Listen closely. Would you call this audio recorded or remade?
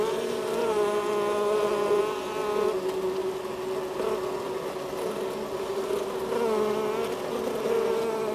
recorded